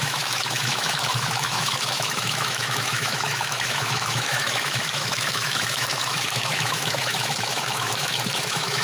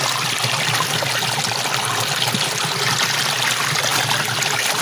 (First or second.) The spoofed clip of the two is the first